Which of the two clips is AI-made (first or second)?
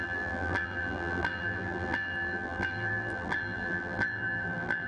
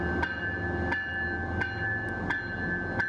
first